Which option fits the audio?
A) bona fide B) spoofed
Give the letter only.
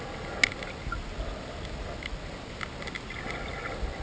A